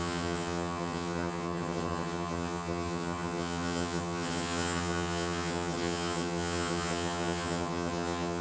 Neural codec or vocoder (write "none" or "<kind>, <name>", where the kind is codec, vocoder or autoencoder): vocoder, HiFi-GAN